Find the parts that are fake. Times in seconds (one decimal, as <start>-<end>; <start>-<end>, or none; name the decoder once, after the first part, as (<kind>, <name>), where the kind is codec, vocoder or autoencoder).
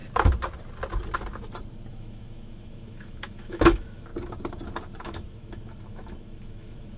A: 1.9-4.1 (autoencoder, DAC-VAE); 5.0-7.0